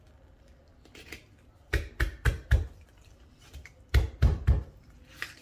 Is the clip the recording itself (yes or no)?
no